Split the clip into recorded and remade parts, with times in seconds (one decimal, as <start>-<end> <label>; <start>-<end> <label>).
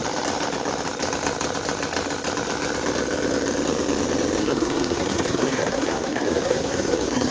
0.0-4.4 recorded; 4.4-7.3 remade